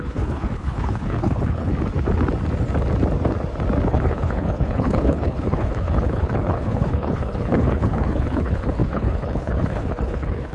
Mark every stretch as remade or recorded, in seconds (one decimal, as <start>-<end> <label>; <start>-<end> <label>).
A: 0.0-1.7 remade; 1.7-3.9 recorded; 3.9-10.5 remade